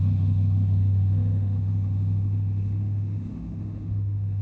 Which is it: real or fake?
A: fake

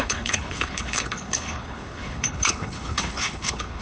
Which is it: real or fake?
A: fake